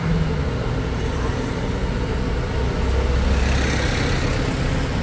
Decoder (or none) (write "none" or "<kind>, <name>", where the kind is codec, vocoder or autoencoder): none